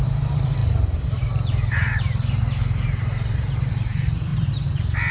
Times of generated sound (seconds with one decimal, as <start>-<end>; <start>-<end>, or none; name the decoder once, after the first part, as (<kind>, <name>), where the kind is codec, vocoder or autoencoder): 0.0-5.1 (vocoder, BigVGAN v2)